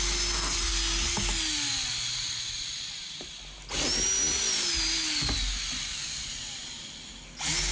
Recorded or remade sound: recorded